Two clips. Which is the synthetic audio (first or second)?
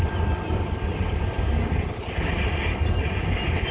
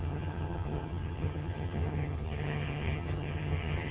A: second